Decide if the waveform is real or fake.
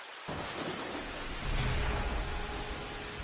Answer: real